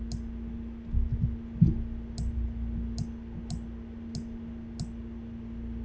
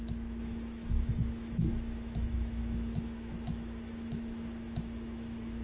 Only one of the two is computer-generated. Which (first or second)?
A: second